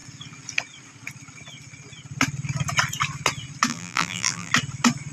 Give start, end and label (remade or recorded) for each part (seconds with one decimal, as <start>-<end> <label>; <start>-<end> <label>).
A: 0.0-3.7 recorded; 3.7-4.5 remade; 4.5-5.1 recorded

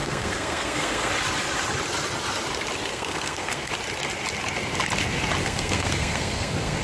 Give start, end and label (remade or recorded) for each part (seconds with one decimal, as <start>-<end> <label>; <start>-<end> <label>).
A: 0.0-1.1 remade; 1.1-2.9 recorded; 2.9-3.7 remade; 3.7-5.4 recorded; 5.4-6.8 remade